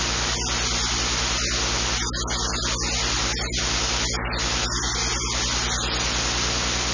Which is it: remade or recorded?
recorded